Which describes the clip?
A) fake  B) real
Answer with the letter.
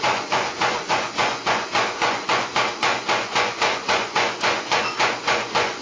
A